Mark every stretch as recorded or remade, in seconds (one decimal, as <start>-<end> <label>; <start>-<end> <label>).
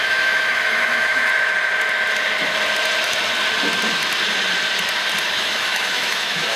0.0-1.3 remade; 1.3-5.3 recorded; 5.3-6.6 remade